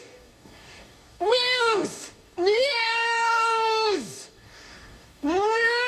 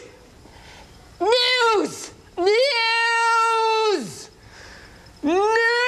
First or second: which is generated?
first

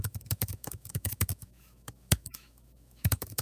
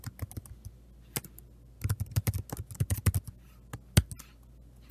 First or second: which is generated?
first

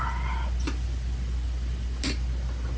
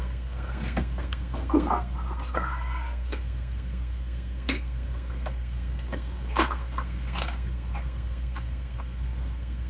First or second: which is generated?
second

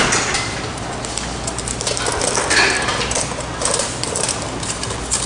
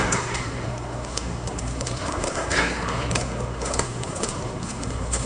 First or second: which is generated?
second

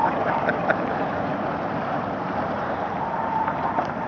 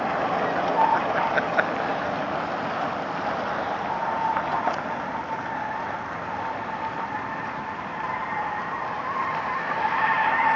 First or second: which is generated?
first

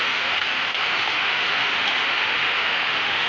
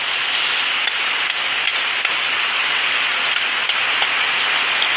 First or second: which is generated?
first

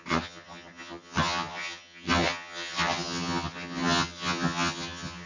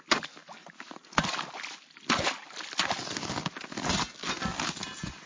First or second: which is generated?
first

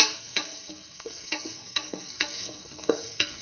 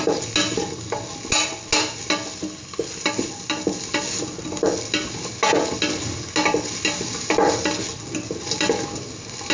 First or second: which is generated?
first